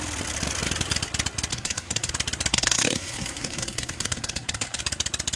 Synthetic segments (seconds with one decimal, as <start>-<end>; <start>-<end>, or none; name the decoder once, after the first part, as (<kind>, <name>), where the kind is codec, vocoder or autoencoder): 1.5-2.1 (codec, SNAC); 2.5-4.8